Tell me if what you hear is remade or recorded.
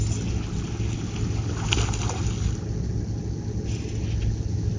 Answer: recorded